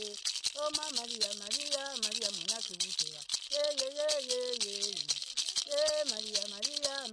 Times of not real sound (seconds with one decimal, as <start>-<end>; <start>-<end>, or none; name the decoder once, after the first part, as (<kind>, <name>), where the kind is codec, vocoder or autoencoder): none